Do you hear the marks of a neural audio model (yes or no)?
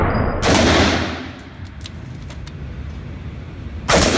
no